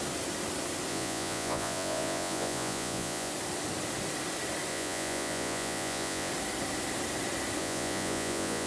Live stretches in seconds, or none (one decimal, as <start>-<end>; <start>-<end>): 0.0-0.9; 3.3-4.7; 6.3-7.6